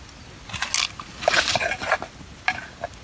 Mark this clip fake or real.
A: real